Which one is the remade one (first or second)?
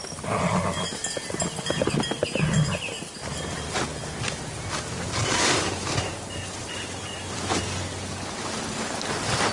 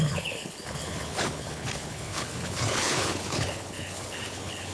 second